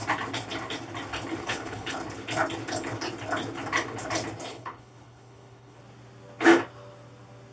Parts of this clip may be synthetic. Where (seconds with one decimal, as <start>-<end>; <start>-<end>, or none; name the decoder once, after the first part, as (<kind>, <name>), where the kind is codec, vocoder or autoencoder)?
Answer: 1.4-2.0 (codec, HILCodec); 4.5-5.8